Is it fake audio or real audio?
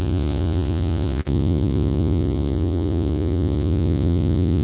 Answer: fake